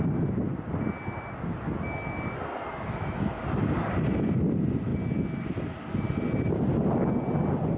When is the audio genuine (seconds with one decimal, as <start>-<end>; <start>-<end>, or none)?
0.0-2.7; 3.4-7.8